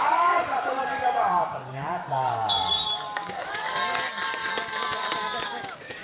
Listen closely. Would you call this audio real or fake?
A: fake